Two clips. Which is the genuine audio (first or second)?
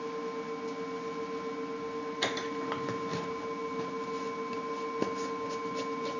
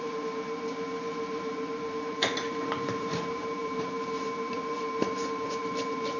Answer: first